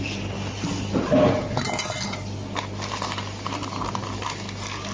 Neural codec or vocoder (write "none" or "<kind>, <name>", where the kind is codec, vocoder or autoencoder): none